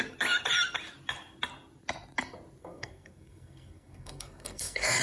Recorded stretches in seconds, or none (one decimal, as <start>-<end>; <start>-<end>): 0.0-2.6